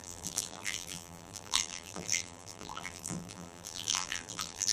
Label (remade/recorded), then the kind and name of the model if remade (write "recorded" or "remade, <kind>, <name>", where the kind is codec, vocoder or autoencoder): remade, vocoder, BigVGAN v2